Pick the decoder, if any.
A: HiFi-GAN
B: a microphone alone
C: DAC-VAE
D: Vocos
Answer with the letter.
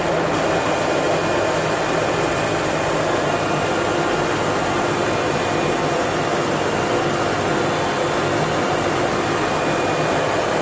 B